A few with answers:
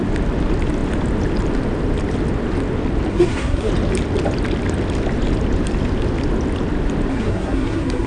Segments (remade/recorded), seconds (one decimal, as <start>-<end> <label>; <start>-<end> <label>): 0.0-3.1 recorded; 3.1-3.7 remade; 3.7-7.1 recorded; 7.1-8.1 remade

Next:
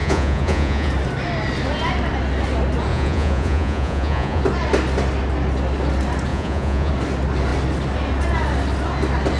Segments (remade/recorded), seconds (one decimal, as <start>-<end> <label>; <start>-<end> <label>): 0.0-0.9 remade; 0.9-2.9 recorded; 2.9-4.4 remade; 4.4-6.3 recorded; 6.3-6.9 remade; 6.9-9.4 recorded

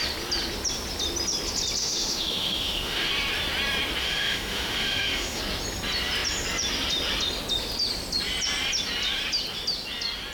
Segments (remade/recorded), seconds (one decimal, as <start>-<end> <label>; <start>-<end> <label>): 0.0-1.8 recorded; 1.8-3.1 remade; 3.1-4.0 recorded; 4.0-5.4 remade; 5.4-10.3 recorded

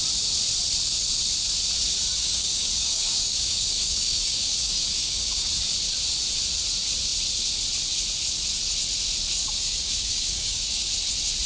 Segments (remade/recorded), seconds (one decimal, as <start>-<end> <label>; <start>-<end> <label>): 0.0-2.2 recorded; 2.2-5.5 remade; 5.5-9.4 recorded; 9.4-10.9 remade; 10.9-11.5 recorded

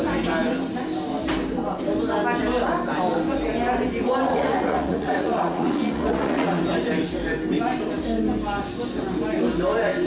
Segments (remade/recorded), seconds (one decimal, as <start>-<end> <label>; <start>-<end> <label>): 0.0-4.2 recorded; 4.2-6.6 remade; 6.6-10.1 recorded